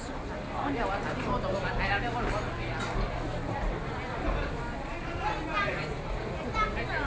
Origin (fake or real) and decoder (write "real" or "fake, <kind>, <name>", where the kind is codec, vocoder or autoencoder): real